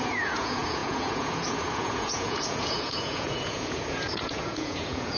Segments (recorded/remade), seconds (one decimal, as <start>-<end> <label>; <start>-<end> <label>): 0.0-5.2 remade